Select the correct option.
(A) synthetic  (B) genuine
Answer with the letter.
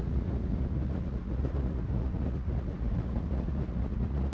A